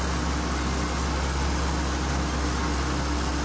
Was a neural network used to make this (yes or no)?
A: no